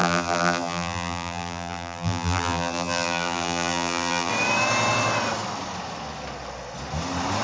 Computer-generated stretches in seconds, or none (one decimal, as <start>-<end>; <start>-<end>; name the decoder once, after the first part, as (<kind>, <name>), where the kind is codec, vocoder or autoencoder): 0.0-4.3 (vocoder, BigVGAN v2)